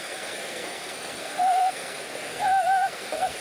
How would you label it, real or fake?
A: fake